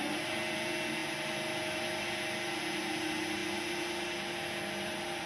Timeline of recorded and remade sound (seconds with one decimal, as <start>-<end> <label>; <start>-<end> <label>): 0.0-5.3 recorded